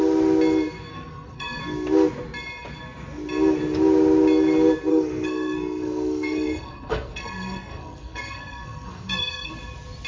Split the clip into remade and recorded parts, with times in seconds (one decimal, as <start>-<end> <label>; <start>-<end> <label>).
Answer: 0.0-0.9 recorded; 0.9-1.6 remade; 1.6-4.9 recorded; 4.9-9.5 remade; 9.5-10.1 recorded